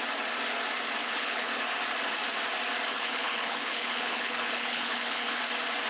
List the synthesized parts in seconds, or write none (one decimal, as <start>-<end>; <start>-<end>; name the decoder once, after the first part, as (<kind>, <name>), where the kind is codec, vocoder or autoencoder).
1.0-1.6 (codec, HILCodec); 2.9-5.4